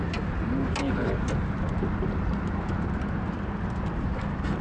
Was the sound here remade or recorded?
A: recorded